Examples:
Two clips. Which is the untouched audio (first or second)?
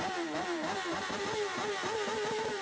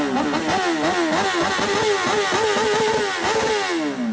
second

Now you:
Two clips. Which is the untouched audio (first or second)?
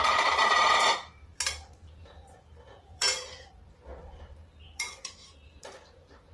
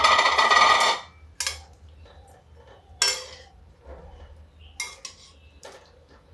second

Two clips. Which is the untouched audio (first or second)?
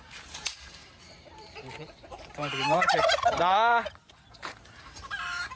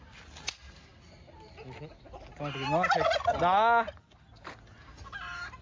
second